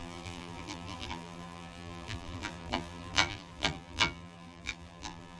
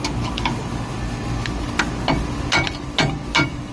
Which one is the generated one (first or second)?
first